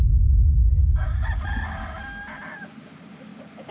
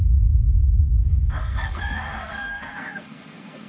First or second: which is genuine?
first